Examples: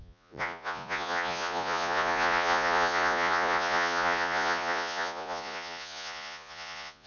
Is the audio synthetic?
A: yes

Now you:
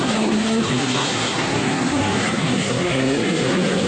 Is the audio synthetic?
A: yes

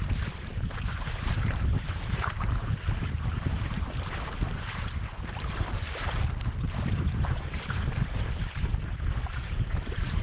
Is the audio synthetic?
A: yes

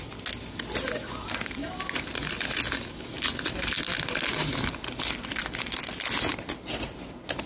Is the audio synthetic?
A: no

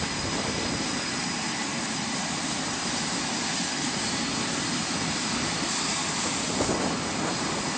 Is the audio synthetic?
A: no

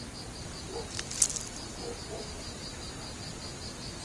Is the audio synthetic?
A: no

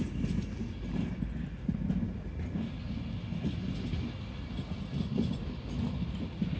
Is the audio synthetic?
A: no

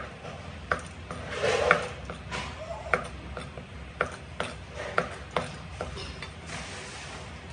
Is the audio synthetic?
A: no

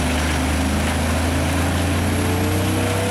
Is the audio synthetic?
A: no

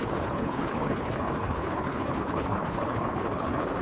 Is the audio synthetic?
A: yes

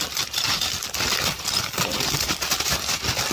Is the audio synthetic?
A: no